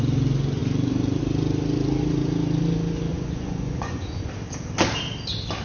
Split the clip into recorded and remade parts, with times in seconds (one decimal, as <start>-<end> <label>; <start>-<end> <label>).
0.0-3.1 recorded; 3.1-4.3 remade; 4.3-5.6 recorded